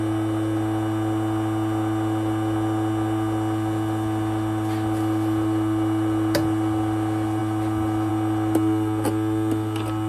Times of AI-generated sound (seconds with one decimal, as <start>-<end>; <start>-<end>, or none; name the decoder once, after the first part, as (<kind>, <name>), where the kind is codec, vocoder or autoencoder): none